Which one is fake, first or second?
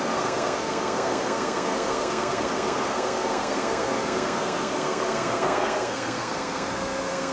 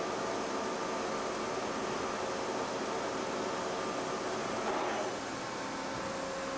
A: first